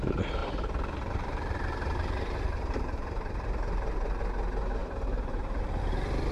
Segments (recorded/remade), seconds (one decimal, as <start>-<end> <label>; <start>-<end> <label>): 0.0-0.4 recorded; 0.4-4.2 remade; 4.2-4.8 recorded; 4.8-5.6 remade; 5.6-6.3 recorded